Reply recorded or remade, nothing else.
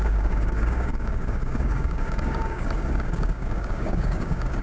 remade